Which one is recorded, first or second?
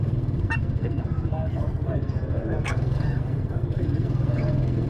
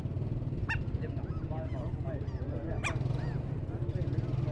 second